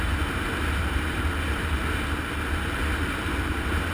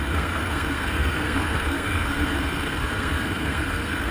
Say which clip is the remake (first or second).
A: second